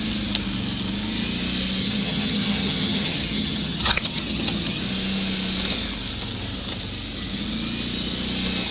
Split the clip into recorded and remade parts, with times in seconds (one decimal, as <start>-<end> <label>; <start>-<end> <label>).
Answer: 0.0-1.8 recorded; 1.8-4.8 remade; 4.8-8.7 recorded